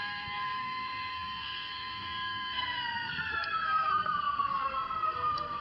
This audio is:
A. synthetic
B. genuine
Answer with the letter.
A